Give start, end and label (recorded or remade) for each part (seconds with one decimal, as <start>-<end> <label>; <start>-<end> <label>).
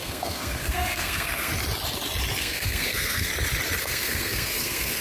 0.0-1.5 remade; 1.5-2.4 recorded; 2.4-3.3 remade; 3.3-3.8 recorded; 3.8-5.0 remade